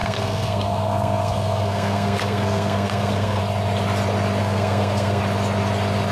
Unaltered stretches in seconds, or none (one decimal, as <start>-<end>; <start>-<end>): 3.4-4.4; 5.2-6.1